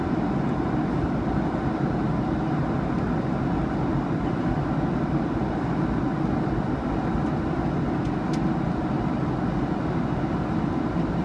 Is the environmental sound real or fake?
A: real